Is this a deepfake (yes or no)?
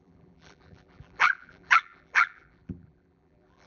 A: yes